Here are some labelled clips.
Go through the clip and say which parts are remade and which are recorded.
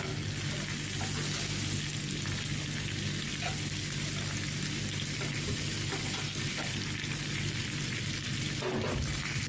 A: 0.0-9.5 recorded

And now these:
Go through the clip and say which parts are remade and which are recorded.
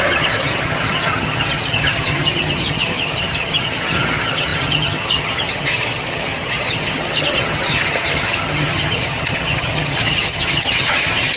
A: 0.0-11.4 remade